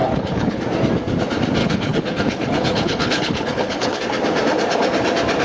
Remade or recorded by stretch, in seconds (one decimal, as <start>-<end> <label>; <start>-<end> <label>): 0.0-0.6 remade; 0.6-1.6 recorded; 1.6-4.0 remade; 4.0-5.4 recorded